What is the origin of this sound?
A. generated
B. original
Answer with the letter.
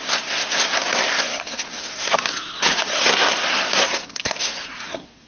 A